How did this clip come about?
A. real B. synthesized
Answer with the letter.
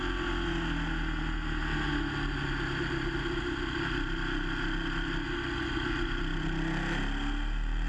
A